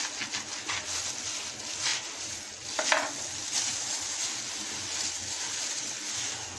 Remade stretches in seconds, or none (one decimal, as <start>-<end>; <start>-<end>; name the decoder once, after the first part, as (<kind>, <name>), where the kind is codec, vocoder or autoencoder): none